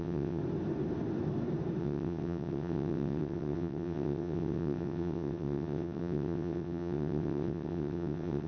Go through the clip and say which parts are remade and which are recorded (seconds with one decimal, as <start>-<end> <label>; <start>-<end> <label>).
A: 0.0-0.4 remade; 0.4-1.8 recorded; 1.8-8.5 remade